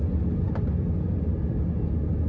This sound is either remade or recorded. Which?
recorded